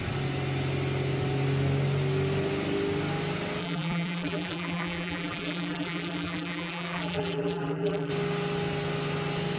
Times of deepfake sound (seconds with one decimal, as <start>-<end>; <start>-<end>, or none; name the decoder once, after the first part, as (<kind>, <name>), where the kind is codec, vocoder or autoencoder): 3.6-8.1 (vocoder, BigVGAN v2)

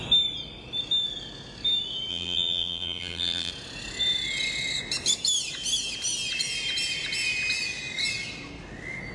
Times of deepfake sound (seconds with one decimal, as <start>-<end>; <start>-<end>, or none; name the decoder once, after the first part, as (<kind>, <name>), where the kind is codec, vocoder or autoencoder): 2.1-3.5 (vocoder, BigVGAN v2)

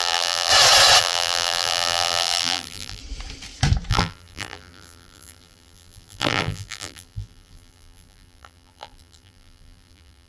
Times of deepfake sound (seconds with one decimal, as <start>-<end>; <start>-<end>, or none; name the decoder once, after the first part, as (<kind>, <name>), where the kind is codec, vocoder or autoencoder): 0.0-0.5 (vocoder, BigVGAN v2); 1.0-3.0; 3.9-10.3

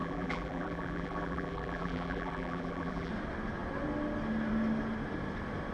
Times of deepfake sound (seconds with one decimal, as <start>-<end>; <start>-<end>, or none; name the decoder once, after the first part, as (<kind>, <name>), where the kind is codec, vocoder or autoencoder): 0.0-3.1 (vocoder, BigVGAN v2)

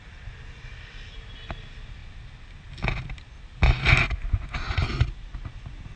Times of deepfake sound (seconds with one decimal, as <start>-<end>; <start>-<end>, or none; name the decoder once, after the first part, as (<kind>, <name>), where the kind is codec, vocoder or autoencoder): none

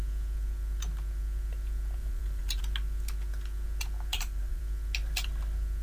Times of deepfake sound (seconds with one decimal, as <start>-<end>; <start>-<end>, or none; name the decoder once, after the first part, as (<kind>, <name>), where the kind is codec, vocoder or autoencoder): 2.0-2.6 (vocoder, BigVGAN v2); 4.1-4.6

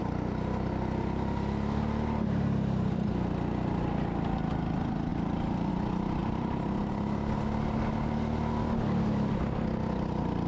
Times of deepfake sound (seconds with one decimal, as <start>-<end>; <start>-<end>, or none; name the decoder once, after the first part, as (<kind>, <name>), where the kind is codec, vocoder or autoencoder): 5.1-5.7 (vocoder, BigVGAN v2); 6.2-6.9

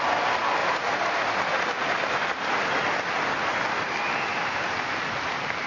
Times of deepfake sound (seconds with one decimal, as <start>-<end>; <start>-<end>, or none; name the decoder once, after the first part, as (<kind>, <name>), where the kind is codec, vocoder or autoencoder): 0.6-1.5 (vocoder, BigVGAN v2); 4.3-4.9